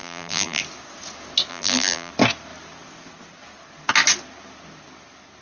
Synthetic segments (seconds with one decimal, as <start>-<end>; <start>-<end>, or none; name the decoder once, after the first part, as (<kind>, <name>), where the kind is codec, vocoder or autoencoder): 0.0-0.6 (vocoder, BigVGAN v2); 1.5-2.1